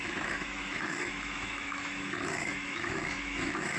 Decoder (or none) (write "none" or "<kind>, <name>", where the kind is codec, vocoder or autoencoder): autoencoder, DAC-VAE